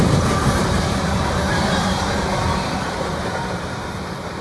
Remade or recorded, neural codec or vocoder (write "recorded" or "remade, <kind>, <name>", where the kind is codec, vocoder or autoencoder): remade, vocoder, BigVGAN v2